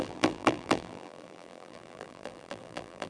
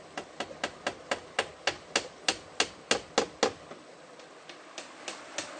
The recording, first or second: second